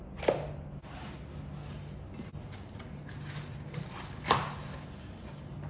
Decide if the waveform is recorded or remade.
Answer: recorded